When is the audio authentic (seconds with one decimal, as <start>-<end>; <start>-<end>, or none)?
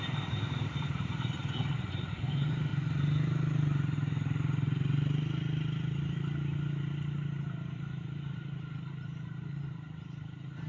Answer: 1.4-2.0; 2.7-6.0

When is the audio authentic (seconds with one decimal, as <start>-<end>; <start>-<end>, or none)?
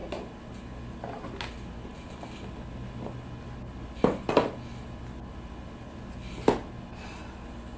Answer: 0.0-7.8